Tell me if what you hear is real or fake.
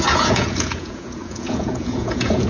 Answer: fake